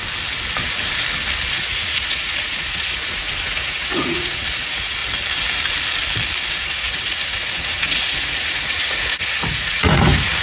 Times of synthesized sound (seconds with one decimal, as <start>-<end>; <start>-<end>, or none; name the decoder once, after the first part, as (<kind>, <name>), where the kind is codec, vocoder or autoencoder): 1.5-5.0 (vocoder, Vocos); 6.5-10.4